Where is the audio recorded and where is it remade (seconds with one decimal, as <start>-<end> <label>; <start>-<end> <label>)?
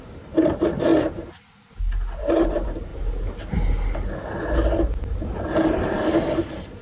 0.0-0.9 remade; 0.9-2.2 recorded; 2.2-2.9 remade; 2.9-4.8 recorded; 4.8-6.8 remade